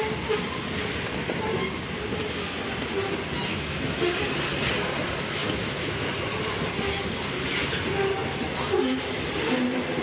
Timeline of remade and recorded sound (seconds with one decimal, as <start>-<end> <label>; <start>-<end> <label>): 0.0-3.5 recorded; 3.5-4.0 remade; 4.0-5.4 recorded; 5.4-6.1 remade; 6.1-10.0 recorded